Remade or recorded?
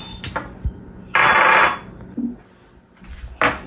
recorded